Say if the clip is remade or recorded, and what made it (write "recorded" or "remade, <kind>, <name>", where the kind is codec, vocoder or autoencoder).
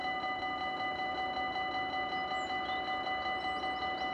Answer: recorded